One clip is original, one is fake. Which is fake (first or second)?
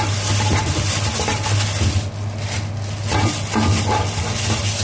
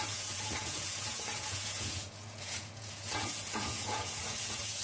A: second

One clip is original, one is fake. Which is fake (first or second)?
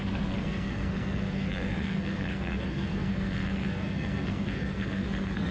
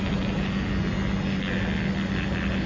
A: first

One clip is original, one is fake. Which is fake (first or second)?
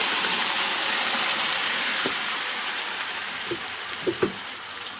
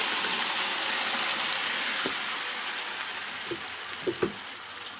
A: first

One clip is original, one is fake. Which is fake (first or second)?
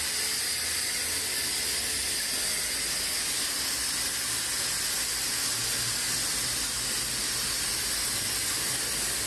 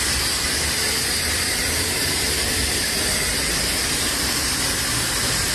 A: second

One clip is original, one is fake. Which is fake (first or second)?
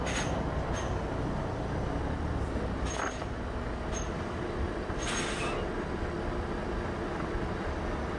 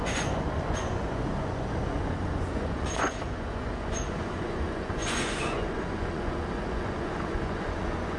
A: second